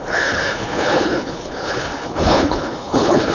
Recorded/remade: remade